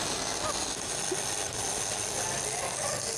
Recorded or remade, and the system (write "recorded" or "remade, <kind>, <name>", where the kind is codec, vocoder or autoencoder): recorded